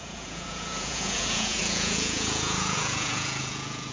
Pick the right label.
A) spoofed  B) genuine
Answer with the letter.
A